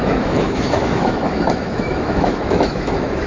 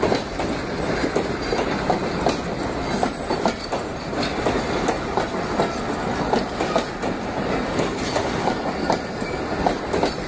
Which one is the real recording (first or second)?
second